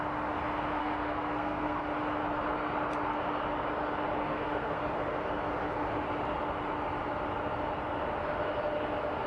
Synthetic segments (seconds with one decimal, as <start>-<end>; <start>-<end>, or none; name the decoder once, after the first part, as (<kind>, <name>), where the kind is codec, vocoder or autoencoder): 0.8-1.8 (codec, SNAC); 4.3-4.8